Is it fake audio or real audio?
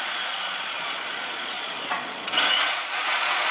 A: fake